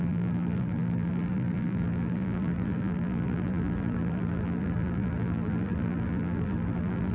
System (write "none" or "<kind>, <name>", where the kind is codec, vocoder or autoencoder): vocoder, BigVGAN v2